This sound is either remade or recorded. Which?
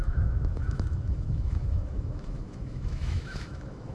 remade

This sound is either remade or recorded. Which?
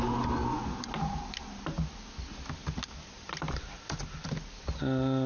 recorded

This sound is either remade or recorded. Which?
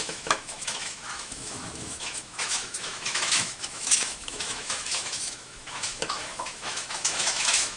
remade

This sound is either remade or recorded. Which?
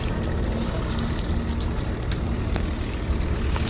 recorded